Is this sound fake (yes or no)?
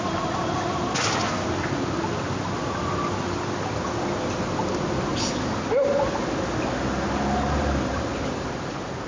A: no